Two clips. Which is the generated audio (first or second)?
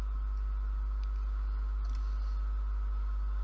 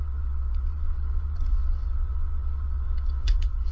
second